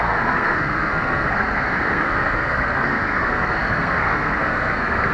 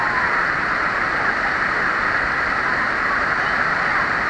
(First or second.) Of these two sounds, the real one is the second